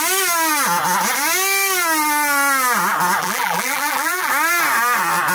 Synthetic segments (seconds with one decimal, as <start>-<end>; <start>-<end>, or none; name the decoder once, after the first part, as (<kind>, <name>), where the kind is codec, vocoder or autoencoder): 3.2-4.3 (vocoder, BigVGAN v2)